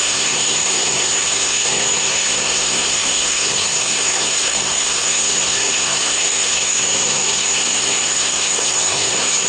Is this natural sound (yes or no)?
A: no